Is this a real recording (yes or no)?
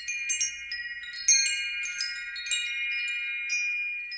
yes